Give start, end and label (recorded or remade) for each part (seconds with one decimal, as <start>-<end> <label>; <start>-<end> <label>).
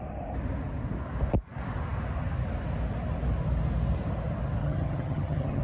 0.0-4.6 recorded; 4.6-5.6 remade